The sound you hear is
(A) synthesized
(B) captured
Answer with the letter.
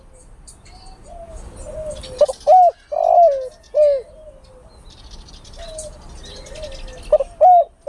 B